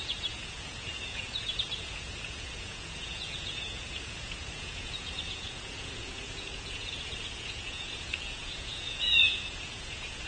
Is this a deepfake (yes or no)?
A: yes